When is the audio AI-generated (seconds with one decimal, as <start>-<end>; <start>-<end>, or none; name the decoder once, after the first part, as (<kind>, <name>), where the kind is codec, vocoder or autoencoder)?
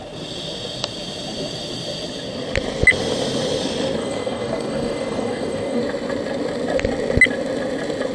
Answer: 4.0-5.8 (codec, DAC)